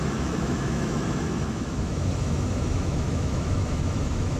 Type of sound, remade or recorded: remade